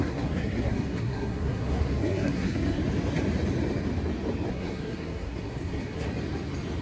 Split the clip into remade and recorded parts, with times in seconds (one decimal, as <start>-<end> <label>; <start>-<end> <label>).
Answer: 0.0-2.8 remade; 2.8-4.5 recorded; 4.5-6.1 remade; 6.1-6.8 recorded